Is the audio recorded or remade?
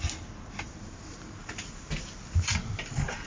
recorded